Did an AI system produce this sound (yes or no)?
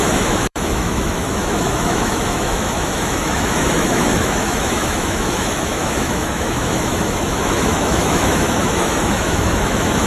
yes